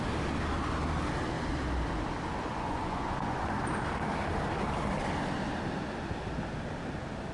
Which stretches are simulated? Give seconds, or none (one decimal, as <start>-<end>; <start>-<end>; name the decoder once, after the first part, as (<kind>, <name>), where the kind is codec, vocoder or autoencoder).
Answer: 2.5-3.5 (vocoder, Vocos)

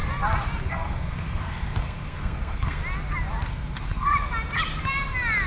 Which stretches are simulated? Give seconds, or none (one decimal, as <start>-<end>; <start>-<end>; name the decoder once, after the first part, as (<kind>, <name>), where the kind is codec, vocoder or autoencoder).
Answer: 0.7-2.8 (codec, SNAC); 3.5-4.1